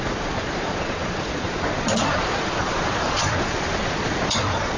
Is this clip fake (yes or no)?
yes